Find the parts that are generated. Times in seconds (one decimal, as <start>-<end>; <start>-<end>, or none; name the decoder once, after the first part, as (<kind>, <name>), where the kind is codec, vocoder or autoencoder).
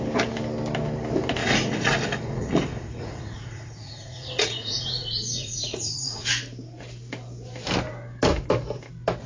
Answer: 1.4-6.3 (vocoder, Vocos)